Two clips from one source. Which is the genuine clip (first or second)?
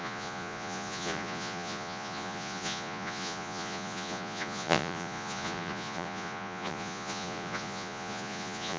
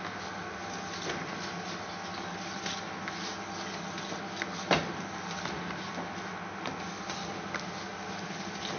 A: second